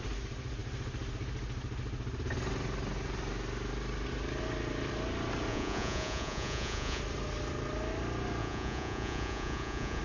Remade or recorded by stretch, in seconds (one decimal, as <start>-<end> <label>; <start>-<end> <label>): 0.0-5.5 recorded; 5.5-7.0 remade; 7.0-8.4 recorded; 8.4-10.0 remade